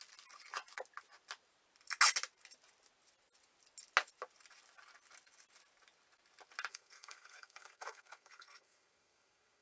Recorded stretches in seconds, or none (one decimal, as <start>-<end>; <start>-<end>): 0.0-6.7